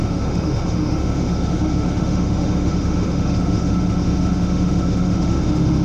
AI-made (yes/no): yes